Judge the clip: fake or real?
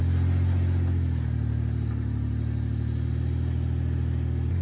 real